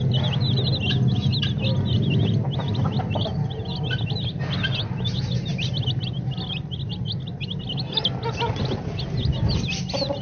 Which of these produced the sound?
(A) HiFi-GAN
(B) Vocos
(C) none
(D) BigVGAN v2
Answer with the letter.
C